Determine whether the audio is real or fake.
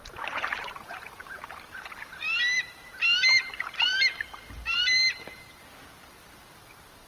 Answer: fake